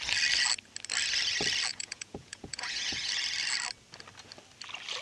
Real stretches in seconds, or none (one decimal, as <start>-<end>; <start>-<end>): 0.0-1.7; 3.1-5.0